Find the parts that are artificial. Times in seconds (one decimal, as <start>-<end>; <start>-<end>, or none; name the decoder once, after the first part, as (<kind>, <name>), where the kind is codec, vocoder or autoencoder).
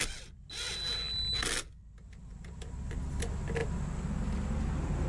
none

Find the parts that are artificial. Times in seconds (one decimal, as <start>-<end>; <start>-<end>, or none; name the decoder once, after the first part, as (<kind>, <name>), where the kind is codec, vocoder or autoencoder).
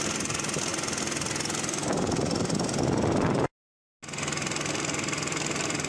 none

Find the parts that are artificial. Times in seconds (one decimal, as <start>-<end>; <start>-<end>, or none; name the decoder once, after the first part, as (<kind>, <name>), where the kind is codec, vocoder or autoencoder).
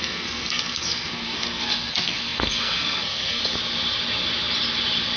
0.0-3.4 (codec, SNAC)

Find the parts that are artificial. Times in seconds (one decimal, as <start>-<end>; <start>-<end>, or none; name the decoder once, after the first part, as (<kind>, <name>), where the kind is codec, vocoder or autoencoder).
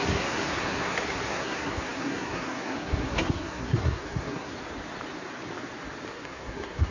0.0-4.5 (codec, SNAC); 6.1-6.9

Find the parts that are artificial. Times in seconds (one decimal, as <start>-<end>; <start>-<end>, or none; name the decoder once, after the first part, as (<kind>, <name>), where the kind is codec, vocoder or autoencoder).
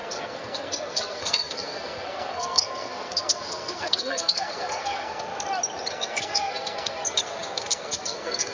0.0-5.3 (codec, SNAC); 5.9-8.5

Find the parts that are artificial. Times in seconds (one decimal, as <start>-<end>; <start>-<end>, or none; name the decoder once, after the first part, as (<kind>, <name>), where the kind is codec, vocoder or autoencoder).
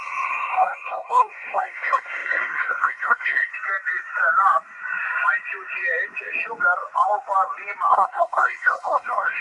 0.0-3.5 (codec, SNAC); 7.9-9.4